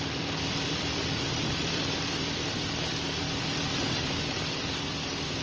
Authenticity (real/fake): fake